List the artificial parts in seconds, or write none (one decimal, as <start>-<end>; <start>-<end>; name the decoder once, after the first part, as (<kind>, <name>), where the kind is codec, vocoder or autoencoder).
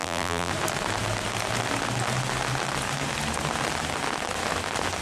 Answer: 0.0-0.5 (vocoder, BigVGAN v2)